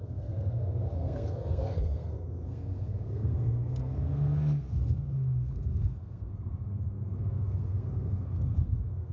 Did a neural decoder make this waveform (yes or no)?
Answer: yes